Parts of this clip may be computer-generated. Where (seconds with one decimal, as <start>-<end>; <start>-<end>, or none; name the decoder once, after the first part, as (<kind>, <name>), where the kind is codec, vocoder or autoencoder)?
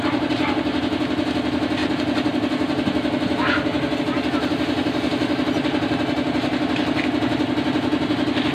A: none